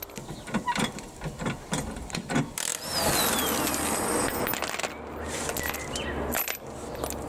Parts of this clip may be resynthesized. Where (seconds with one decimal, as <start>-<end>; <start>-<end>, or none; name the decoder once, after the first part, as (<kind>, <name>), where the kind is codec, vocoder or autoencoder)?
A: none